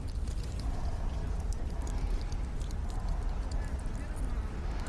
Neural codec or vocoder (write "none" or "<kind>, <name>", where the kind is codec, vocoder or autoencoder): none